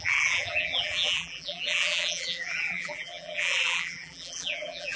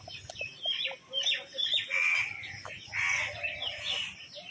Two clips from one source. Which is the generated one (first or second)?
first